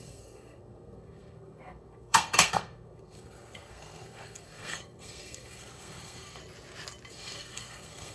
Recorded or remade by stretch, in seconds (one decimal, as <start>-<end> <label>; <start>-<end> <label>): 0.0-6.4 remade; 6.4-7.1 recorded; 7.1-8.1 remade